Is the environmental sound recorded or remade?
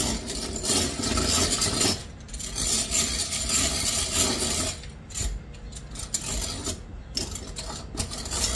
remade